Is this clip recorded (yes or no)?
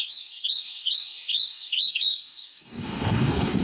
no